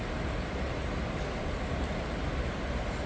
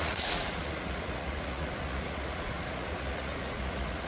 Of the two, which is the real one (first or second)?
first